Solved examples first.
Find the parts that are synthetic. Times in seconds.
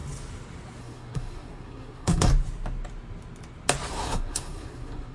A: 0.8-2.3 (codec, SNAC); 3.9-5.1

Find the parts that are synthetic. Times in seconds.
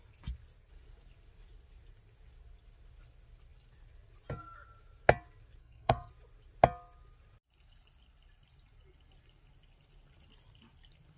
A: 5.6-6.1 (codec, SNAC)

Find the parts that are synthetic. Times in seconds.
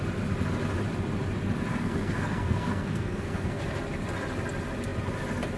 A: 1.7-3.6 (codec, SNAC)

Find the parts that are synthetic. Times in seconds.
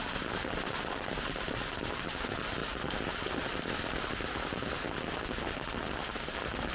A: none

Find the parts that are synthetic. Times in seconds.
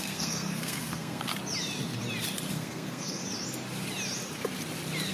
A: 0.0-1.3 (codec, SNAC); 2.5-3.2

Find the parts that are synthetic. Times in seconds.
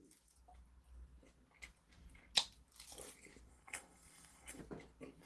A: 3.5-4.6 (codec, SNAC)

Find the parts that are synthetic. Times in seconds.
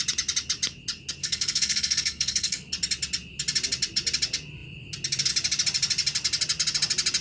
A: 1.2-2.7 (codec, SNAC)